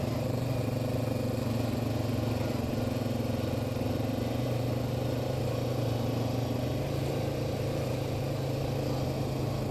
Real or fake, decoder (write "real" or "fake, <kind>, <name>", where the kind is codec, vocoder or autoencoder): real